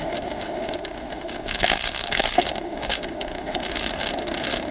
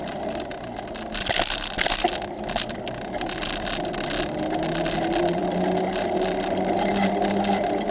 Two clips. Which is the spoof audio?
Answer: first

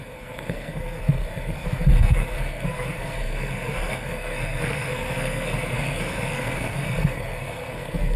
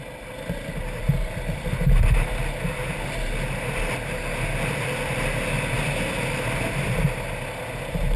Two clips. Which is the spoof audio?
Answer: first